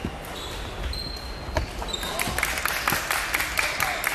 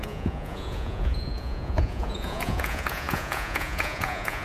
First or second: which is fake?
second